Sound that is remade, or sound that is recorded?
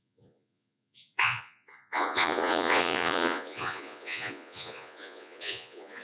remade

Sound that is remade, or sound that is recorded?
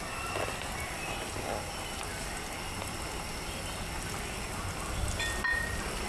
recorded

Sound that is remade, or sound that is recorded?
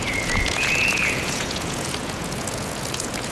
remade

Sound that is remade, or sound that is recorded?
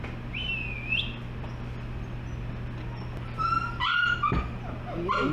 recorded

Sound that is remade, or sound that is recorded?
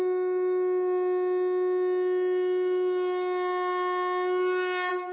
recorded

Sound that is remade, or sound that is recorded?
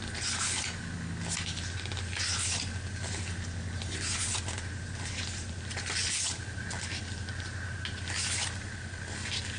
recorded